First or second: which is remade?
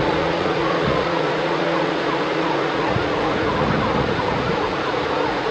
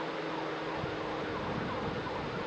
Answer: first